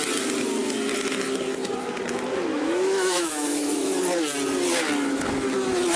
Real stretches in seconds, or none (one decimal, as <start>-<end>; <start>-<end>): 0.0-2.5; 4.0-6.0